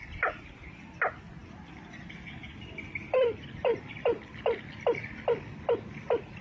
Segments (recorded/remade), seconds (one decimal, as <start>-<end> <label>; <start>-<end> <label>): 0.0-6.4 recorded